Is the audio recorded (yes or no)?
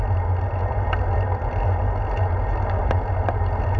yes